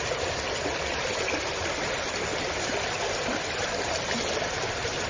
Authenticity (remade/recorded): remade